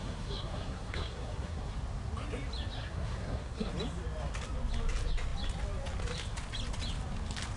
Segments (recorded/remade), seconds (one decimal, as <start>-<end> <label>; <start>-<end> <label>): 0.0-1.7 remade; 1.7-2.8 recorded; 2.8-3.7 remade; 3.7-7.6 recorded